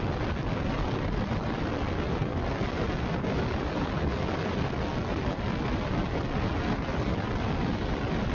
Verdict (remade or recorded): recorded